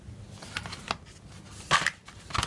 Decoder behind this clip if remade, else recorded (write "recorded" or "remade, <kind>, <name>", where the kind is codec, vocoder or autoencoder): recorded